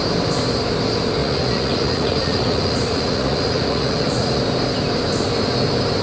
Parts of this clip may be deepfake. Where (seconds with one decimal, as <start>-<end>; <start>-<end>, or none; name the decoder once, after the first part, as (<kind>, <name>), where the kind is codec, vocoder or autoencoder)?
1.2-4.4 (vocoder, Vocos)